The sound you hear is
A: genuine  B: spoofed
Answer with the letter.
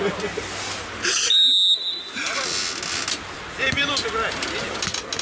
A